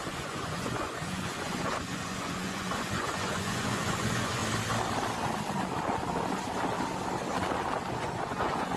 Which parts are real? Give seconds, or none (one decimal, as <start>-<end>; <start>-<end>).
4.4-7.9